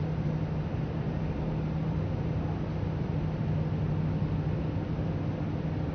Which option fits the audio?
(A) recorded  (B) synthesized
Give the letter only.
A